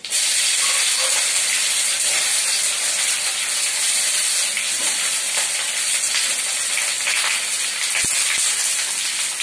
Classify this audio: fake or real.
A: real